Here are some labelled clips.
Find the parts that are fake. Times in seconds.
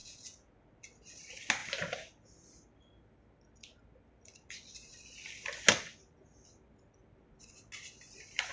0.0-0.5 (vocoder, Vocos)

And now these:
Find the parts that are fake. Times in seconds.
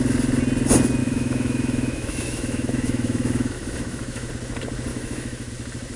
1.0-4.3 (autoencoder, DAC-VAE); 4.9-5.5